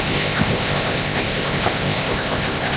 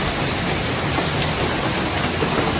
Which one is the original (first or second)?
second